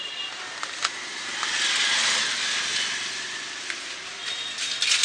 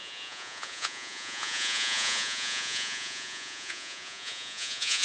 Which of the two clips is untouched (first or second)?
first